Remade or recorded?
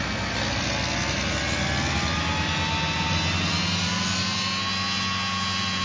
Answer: recorded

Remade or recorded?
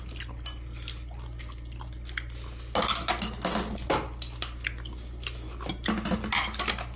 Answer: recorded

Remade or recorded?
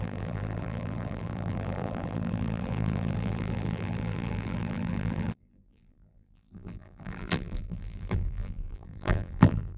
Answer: remade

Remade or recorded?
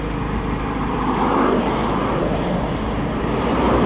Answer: recorded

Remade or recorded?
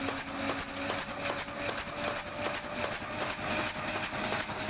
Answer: recorded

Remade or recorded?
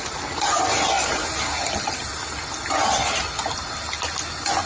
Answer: recorded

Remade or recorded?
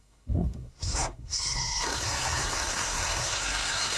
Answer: remade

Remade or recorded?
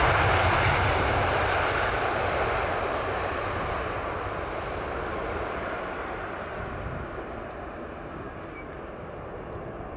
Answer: recorded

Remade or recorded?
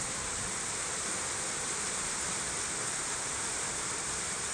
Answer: remade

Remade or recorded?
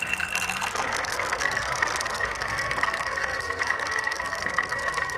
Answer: remade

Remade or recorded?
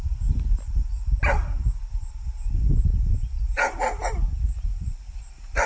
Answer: recorded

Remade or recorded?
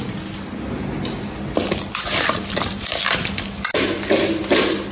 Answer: recorded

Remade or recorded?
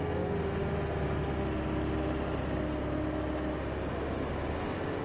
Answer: recorded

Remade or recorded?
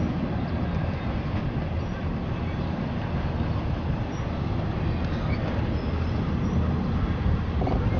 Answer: recorded